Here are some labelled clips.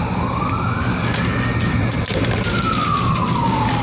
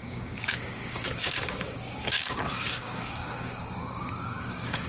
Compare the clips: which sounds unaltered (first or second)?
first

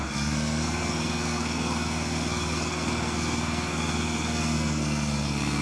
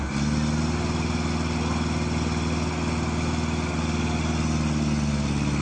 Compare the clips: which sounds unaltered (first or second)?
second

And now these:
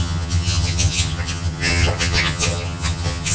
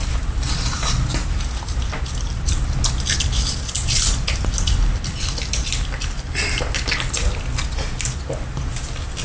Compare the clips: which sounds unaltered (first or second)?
second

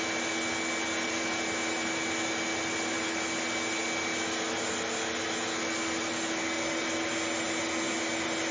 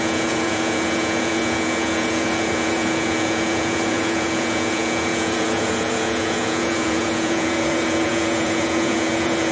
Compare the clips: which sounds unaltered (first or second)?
first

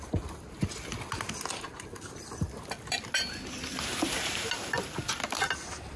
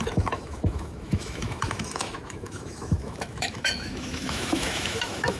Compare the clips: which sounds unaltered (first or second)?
first